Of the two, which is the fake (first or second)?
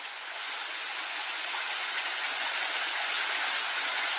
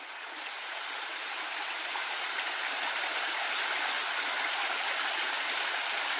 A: first